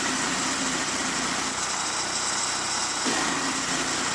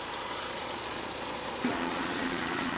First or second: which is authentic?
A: first